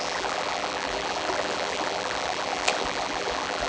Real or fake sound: fake